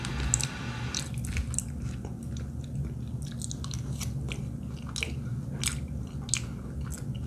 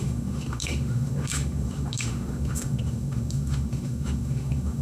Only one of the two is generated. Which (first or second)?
second